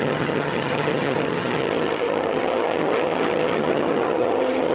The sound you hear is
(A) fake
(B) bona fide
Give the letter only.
A